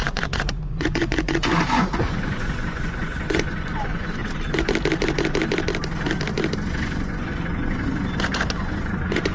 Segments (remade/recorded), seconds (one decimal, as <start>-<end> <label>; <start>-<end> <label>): 0.0-4.2 remade; 4.2-6.7 recorded; 6.7-9.3 remade